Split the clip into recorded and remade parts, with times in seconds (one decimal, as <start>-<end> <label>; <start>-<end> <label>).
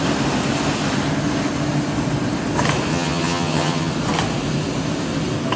0.0-2.9 recorded; 2.9-3.9 remade; 3.9-5.6 recorded